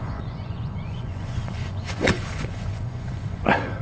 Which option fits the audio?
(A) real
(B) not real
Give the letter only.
B